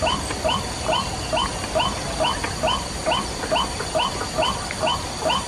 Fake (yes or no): no